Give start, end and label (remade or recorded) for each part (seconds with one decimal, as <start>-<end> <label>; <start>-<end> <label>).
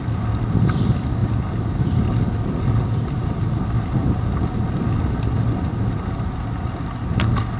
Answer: 0.0-7.6 recorded